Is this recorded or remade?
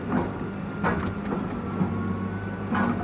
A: recorded